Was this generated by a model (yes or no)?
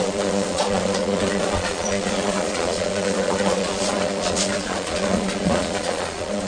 yes